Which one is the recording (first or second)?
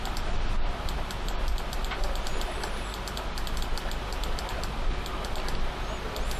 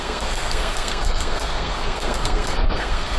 first